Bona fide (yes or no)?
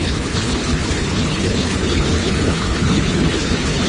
no